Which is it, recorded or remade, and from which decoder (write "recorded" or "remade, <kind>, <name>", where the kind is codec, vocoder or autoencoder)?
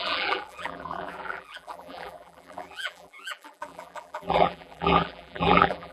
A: remade, vocoder, BigVGAN v2